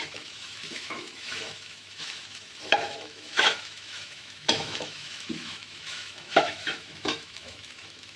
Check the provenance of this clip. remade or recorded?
remade